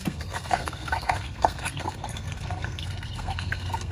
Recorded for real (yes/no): no